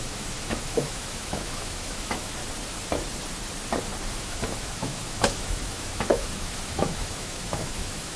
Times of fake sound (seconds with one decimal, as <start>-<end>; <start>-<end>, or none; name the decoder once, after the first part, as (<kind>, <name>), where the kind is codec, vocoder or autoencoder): 0.0-2.4 (autoencoder, DAC-VAE); 4.1-8.2